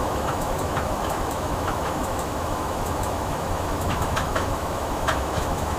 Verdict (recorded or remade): remade